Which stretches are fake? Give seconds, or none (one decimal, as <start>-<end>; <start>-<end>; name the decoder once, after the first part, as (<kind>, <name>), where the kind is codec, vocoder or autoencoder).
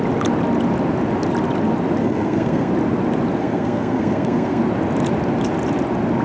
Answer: 2.0-2.7 (codec, SNAC); 3.4-4.6